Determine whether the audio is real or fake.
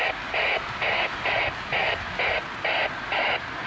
real